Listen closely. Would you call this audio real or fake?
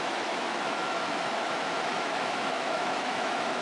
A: fake